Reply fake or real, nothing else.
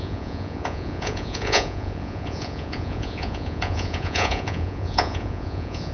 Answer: fake